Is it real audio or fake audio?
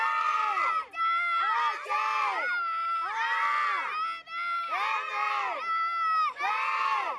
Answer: real